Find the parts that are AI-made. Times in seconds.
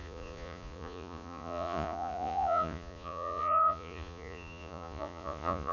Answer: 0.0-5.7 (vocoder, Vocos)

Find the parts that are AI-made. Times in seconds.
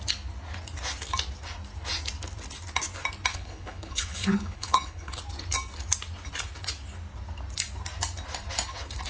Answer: 3.3-5.2 (codec, HILCodec)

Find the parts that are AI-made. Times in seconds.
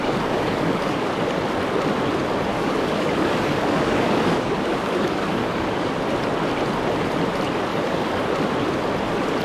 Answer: 0.0-1.1 (codec, DAC); 2.5-5.9; 7.7-8.3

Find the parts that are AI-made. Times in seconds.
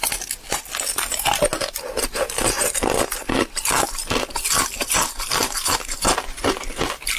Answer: none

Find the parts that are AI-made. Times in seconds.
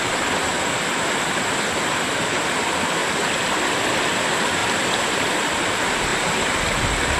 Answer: 0.4-0.9 (vocoder, BigVGAN v2); 4.6-5.4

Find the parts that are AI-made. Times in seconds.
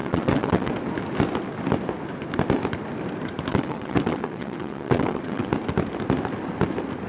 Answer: 0.0-0.7 (vocoder, WaveNeXt); 3.5-5.5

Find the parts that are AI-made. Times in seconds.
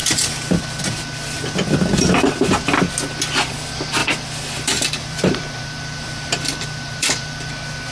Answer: 4.0-7.5 (vocoder, BigVGAN v2)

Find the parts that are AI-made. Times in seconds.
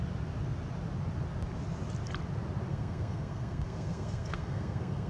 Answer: 2.7-5.1 (codec, SNAC)